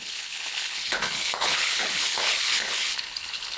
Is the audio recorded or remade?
remade